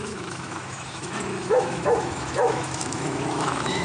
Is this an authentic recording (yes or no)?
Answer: no